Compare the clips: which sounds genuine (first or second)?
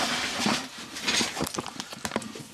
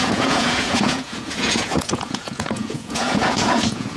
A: first